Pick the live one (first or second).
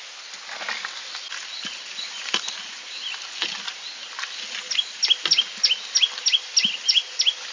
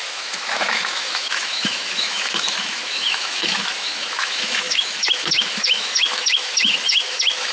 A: first